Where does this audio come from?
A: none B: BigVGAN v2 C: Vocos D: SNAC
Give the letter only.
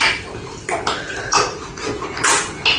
A